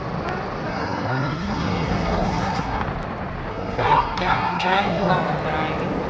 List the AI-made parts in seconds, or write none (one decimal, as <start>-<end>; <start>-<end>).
0.7-2.8; 3.5-5.1